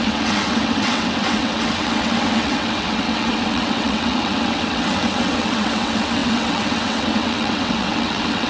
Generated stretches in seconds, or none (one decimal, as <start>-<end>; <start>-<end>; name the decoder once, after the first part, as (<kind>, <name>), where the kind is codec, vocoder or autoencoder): 0.0-8.5 (vocoder, WaveNeXt)